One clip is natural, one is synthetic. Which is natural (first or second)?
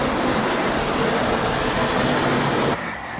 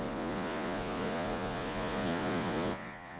first